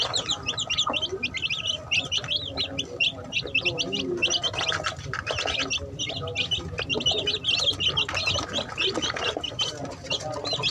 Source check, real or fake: real